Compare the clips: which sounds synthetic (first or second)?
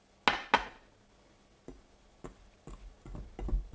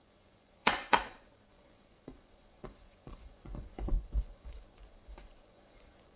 second